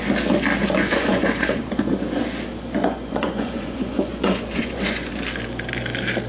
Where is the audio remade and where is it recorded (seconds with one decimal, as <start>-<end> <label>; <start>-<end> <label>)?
0.0-0.6 recorded; 0.6-1.9 remade; 1.9-2.8 recorded; 2.8-5.1 remade; 5.1-6.3 recorded